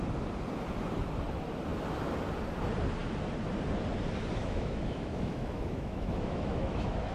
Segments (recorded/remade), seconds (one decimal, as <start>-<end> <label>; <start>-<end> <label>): 0.0-4.4 recorded; 4.4-7.1 remade